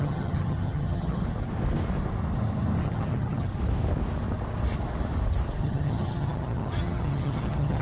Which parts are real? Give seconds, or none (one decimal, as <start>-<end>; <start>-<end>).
1.2-2.8; 3.5-5.6